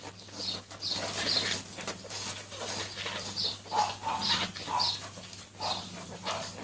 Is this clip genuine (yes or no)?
yes